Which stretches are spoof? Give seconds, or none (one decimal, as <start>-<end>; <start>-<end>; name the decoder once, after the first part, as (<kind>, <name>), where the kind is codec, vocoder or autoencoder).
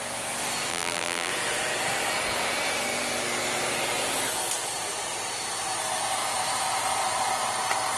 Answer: 0.7-1.3 (vocoder, BigVGAN v2)